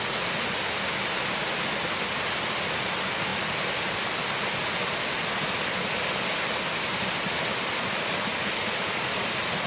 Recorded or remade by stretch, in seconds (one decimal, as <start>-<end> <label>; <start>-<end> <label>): 0.0-9.7 recorded